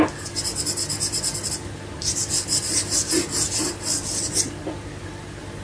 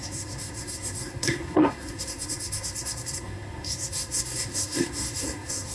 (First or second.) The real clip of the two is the first